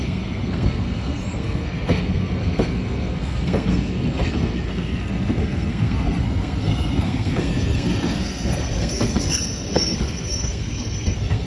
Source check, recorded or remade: remade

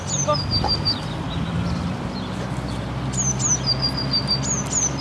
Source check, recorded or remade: recorded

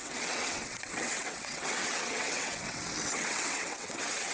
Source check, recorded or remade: remade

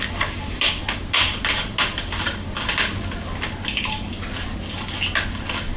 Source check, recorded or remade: recorded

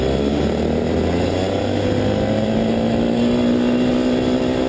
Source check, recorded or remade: recorded